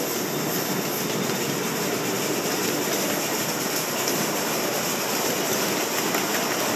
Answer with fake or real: real